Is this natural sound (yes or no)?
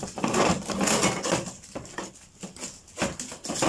yes